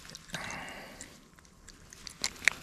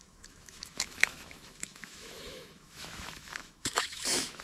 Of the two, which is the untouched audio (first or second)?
first